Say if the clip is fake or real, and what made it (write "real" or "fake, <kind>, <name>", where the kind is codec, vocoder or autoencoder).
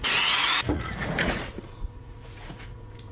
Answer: fake, vocoder, Vocos